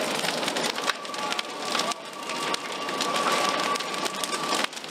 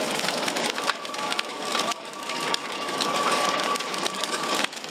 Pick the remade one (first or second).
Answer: second